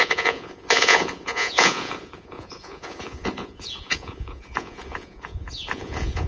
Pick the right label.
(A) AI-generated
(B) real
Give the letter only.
A